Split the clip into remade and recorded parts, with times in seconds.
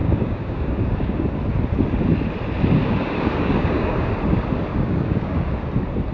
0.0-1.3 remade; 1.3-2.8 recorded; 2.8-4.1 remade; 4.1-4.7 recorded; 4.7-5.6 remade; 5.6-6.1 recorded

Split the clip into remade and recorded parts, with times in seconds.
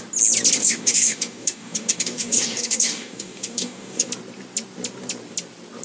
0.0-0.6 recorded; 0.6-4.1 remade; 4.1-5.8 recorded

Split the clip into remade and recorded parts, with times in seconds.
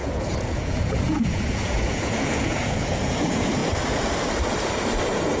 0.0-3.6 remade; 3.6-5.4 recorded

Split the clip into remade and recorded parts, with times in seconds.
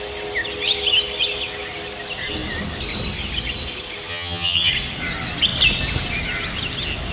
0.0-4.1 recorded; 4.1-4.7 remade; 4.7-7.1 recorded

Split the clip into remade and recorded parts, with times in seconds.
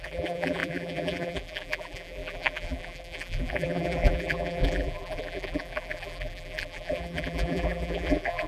0.0-8.5 remade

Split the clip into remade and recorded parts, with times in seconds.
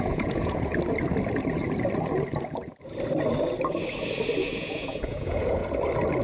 0.0-0.7 remade; 0.7-4.4 recorded; 4.4-5.6 remade; 5.6-6.2 recorded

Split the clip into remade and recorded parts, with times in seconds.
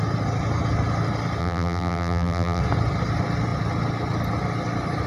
0.0-1.4 recorded; 1.4-2.6 remade; 2.6-5.1 recorded